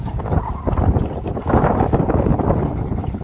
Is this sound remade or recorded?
recorded